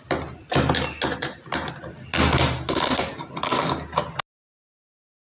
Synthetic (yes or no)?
no